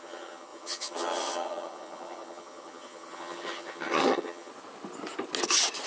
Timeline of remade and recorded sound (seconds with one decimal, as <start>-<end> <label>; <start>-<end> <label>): 0.0-4.5 remade; 4.5-5.9 recorded